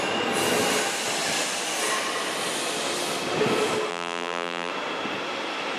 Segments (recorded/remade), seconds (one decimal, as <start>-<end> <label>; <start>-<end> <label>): 0.0-3.9 recorded; 3.9-4.7 remade; 4.7-5.8 recorded